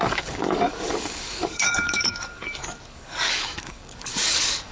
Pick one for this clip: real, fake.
fake